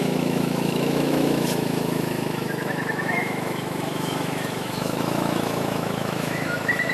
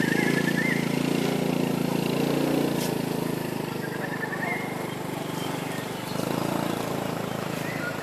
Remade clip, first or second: first